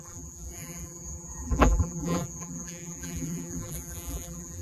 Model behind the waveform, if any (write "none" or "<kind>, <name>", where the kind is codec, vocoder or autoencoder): vocoder, BigVGAN v2